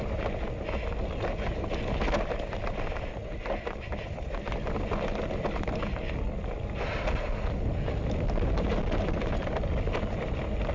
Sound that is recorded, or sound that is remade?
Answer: recorded